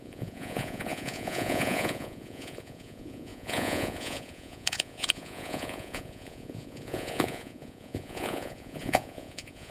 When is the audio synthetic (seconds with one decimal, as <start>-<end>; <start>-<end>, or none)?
0.0-9.7